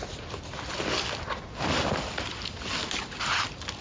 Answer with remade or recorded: recorded